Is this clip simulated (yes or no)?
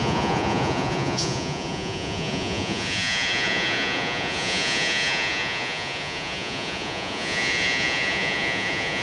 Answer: yes